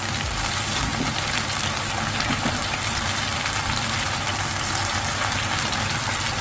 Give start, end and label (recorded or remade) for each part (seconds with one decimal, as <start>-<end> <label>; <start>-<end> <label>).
0.0-0.9 recorded; 0.9-1.9 remade; 1.9-2.6 recorded; 2.6-3.4 remade; 3.4-6.4 recorded